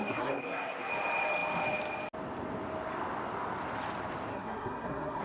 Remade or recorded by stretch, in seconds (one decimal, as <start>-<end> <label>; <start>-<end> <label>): 0.0-0.9 remade; 0.9-4.3 recorded; 4.3-5.2 remade